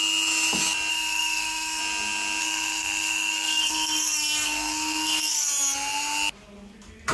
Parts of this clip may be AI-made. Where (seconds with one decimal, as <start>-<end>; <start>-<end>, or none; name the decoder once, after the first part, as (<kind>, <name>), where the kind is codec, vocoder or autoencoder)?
0.9-1.8 (codec, SNAC); 2.4-5.5

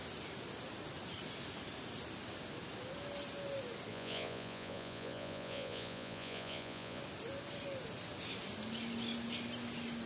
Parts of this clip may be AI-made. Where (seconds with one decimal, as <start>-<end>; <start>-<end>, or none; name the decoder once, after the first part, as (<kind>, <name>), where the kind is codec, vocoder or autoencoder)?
3.9-7.0 (vocoder, Vocos)

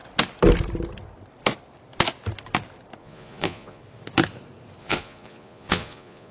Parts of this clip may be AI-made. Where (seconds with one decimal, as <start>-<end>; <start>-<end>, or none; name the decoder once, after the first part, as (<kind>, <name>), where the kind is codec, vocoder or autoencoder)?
3.0-3.8 (vocoder, Vocos); 4.8-6.3

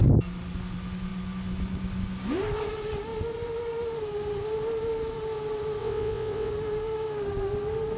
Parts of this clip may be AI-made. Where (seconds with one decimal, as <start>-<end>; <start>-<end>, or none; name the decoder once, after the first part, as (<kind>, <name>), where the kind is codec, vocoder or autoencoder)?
5.8-6.5 (vocoder, WaveNeXt)

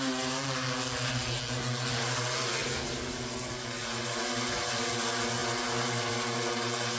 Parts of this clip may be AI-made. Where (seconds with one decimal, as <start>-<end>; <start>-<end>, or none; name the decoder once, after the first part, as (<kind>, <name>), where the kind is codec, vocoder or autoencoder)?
none

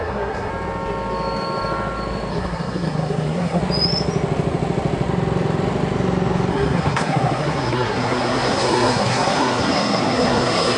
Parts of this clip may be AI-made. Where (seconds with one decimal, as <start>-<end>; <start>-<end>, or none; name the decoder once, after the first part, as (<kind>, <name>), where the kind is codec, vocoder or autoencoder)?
0.0-0.5 (codec, SNAC); 2.3-3.6; 6.5-10.8